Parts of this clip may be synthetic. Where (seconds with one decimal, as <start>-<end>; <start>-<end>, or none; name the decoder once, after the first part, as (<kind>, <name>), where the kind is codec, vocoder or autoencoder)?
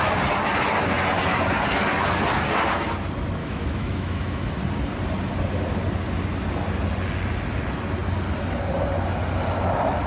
3.4-4.5 (autoencoder, DAC-VAE)